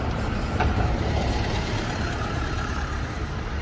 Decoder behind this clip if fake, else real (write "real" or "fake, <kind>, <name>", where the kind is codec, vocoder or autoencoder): fake, vocoder, BigVGAN v2